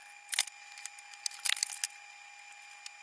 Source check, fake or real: real